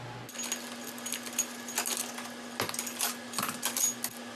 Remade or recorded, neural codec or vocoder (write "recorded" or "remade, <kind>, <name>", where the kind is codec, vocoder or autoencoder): recorded